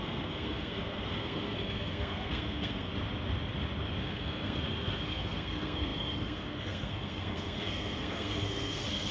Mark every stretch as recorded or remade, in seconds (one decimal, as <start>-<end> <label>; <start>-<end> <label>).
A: 0.0-2.9 remade; 2.9-4.0 recorded; 4.0-9.1 remade

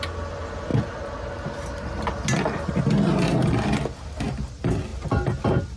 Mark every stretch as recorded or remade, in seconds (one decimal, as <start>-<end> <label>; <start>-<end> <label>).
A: 0.0-5.8 recorded